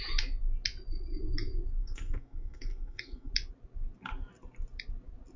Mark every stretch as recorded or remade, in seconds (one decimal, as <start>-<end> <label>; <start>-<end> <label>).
0.0-1.8 recorded; 1.8-3.3 remade; 3.3-5.4 recorded